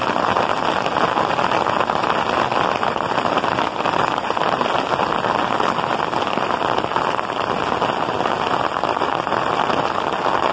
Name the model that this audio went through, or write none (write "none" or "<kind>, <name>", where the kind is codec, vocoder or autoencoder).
none